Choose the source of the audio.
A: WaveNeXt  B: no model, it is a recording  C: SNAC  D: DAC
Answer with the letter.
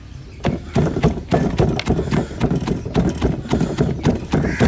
B